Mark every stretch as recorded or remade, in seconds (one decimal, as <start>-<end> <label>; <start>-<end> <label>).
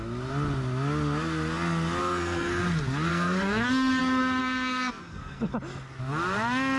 0.0-2.0 recorded; 2.0-2.6 remade; 2.6-3.1 recorded; 3.1-4.0 remade; 4.0-4.4 recorded; 4.4-5.5 remade; 5.5-6.8 recorded